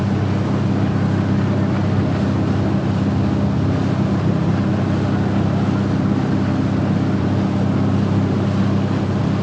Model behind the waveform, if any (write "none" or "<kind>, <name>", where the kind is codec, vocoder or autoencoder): none